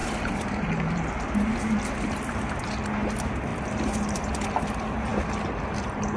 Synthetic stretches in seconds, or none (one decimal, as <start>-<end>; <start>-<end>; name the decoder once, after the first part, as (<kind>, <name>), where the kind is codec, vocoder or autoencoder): 0.0-1.6 (vocoder, BigVGAN v2); 3.5-4.3